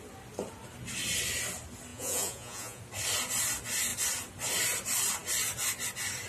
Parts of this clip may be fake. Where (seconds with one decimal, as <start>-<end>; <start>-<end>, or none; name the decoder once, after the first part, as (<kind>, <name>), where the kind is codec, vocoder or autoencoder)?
1.9-2.8 (vocoder, Vocos)